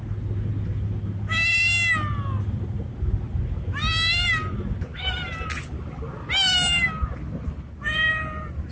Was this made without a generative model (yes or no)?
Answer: yes